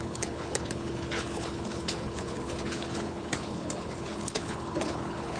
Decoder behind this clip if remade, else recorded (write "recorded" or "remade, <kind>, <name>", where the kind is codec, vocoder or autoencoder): remade, codec, HILCodec